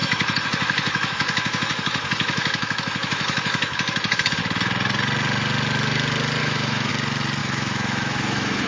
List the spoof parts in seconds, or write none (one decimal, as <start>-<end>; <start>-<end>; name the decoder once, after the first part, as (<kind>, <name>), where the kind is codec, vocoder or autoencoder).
0.0-4.4 (autoencoder, DAC-VAE); 6.4-6.9; 7.4-8.7